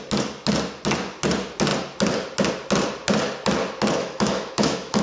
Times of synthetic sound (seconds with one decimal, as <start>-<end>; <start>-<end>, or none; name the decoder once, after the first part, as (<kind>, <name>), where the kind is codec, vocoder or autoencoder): 4.0-5.0 (autoencoder, DAC-VAE)